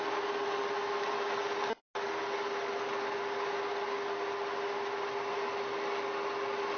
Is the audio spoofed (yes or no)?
no